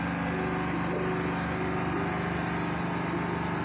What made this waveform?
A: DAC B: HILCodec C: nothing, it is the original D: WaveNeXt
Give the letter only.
C